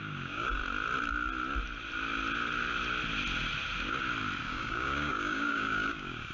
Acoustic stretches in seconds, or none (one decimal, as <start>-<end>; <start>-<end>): 0.6-4.4